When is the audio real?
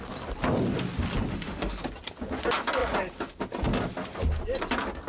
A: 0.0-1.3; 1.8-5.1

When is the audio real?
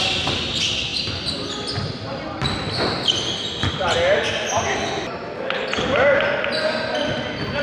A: 0.0-7.6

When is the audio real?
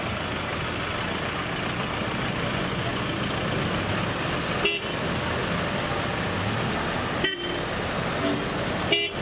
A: 0.0-2.5; 3.0-9.2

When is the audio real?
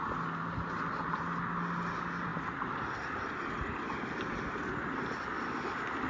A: 0.0-2.3; 4.2-6.1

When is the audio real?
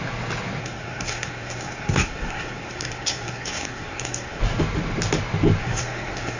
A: 0.0-0.6; 4.4-5.6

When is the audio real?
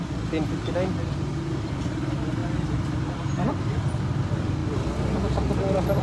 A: 0.0-6.0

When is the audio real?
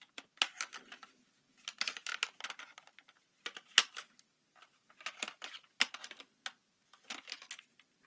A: 0.0-8.1